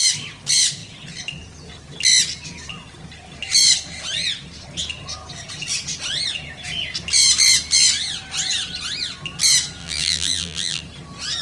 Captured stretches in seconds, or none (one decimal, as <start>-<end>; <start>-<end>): 0.0-9.8; 10.8-11.4